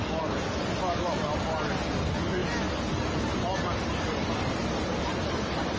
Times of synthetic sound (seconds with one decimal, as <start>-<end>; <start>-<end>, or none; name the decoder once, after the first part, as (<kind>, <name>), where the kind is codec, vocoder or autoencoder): none

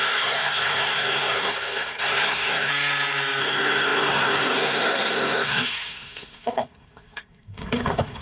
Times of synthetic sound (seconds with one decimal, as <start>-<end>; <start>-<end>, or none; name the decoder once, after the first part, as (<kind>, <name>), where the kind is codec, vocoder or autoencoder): 0.0-2.7 (codec, SNAC); 3.4-8.2

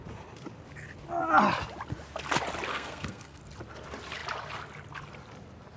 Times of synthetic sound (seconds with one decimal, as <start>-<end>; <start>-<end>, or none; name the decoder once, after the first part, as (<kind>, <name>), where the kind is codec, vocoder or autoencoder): 2.7-3.4 (codec, SNAC)